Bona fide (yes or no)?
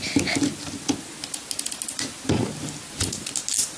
yes